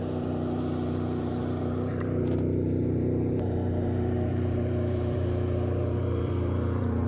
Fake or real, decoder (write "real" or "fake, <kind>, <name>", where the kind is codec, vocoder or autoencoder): fake, vocoder, BigVGAN v2